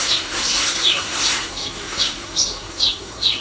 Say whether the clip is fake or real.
fake